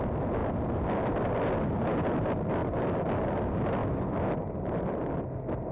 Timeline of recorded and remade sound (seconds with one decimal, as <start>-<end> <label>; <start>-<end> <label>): 0.0-3.8 recorded; 3.8-5.2 remade; 5.2-5.7 recorded